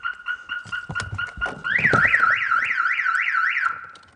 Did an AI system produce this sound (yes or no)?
no